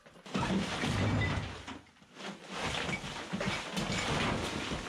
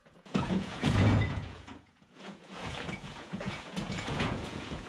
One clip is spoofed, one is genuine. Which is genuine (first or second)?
first